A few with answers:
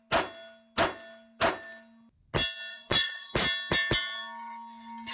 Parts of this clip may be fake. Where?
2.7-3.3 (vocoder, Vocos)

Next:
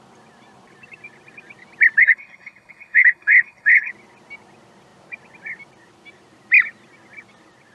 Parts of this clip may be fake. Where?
2.0-3.9 (codec, HILCodec)

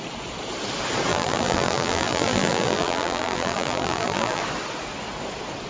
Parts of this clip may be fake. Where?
1.1-4.4 (vocoder, BigVGAN v2)

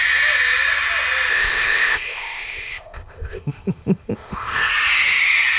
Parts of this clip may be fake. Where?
1.3-4.7 (codec, ZipCodec)

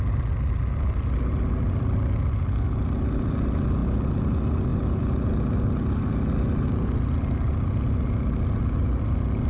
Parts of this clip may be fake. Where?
none